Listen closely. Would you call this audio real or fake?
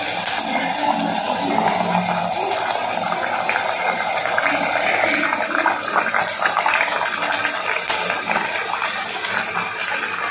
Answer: real